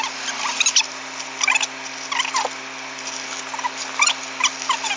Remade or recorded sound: recorded